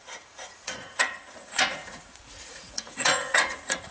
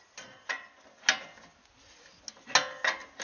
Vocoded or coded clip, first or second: first